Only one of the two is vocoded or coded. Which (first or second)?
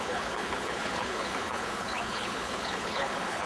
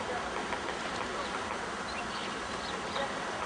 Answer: first